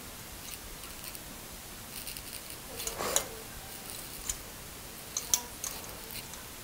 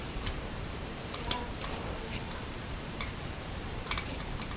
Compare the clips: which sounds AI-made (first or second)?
second